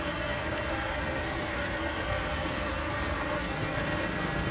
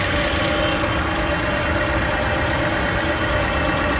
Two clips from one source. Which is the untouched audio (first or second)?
second